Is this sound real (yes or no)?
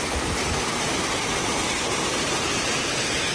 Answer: yes